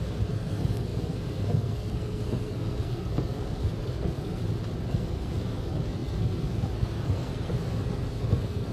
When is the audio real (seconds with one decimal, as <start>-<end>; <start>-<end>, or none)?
4.4-4.9